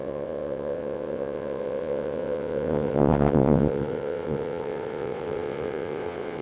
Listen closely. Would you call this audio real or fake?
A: fake